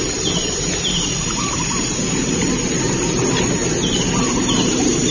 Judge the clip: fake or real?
real